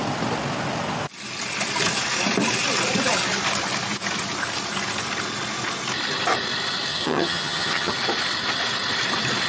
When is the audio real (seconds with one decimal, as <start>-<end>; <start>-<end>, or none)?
0.0-6.9; 7.9-9.5